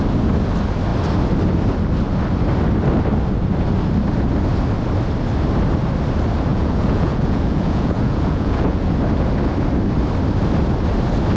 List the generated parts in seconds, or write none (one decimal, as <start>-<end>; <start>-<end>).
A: 6.5-8.9